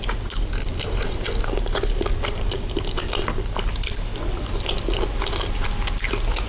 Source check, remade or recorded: recorded